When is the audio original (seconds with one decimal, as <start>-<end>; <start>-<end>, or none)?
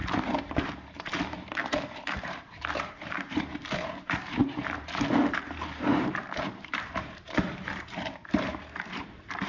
none